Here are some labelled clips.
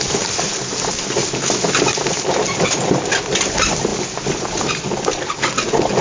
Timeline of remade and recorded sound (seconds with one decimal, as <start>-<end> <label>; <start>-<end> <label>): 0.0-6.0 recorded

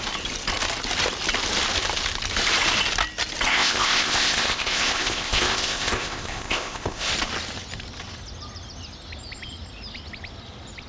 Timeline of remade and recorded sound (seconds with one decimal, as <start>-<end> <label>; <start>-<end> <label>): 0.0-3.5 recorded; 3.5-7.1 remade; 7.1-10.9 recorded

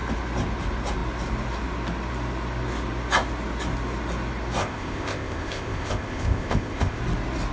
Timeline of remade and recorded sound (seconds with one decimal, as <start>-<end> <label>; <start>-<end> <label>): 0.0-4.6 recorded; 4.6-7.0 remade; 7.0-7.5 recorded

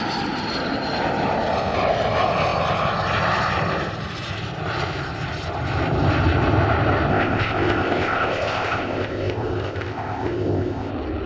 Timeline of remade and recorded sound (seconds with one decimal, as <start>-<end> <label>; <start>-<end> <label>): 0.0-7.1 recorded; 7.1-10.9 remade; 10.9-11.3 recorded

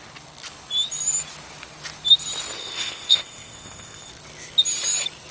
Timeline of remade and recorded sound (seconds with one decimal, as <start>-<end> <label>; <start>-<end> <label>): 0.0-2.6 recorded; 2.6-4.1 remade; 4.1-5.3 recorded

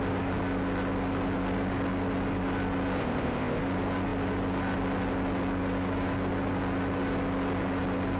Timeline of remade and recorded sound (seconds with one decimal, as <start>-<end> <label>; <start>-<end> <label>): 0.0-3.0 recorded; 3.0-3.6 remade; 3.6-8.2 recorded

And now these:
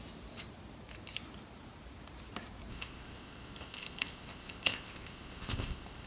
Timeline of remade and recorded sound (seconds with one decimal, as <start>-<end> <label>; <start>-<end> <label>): 0.0-2.7 recorded; 2.7-6.1 remade

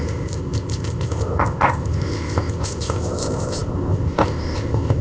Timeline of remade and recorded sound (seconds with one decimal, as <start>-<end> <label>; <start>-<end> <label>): 0.0-5.0 remade